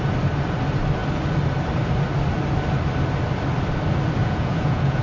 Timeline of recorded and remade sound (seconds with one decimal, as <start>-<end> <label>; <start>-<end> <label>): 0.0-4.2 recorded; 4.2-5.0 remade